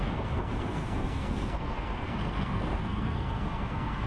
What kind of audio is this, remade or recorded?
remade